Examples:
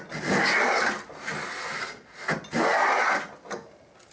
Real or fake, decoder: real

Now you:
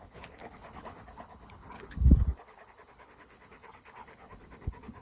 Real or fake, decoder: fake, codec, HILCodec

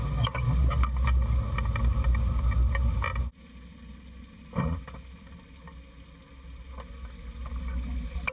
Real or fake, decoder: real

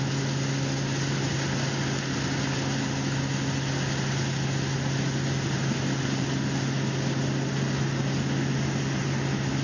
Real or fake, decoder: real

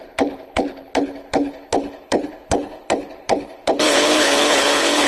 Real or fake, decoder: fake, codec, HILCodec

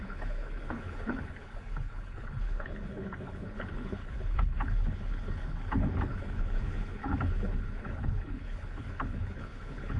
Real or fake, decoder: fake, codec, HILCodec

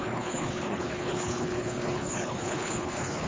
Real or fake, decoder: fake, codec, HILCodec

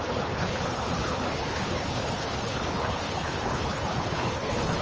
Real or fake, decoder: fake, codec, HILCodec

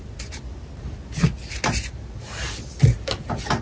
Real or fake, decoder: real